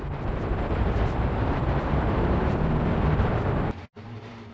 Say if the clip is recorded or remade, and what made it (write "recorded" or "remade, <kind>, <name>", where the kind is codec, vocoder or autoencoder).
remade, vocoder, BigVGAN v2